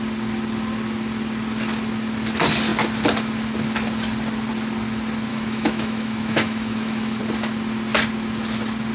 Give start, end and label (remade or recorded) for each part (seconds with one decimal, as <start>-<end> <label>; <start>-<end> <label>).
0.0-5.3 recorded; 5.3-7.2 remade; 7.2-8.9 recorded